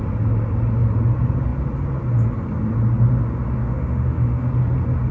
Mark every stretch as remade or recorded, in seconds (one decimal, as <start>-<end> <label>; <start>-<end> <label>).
0.0-3.6 recorded; 3.6-4.5 remade; 4.5-5.1 recorded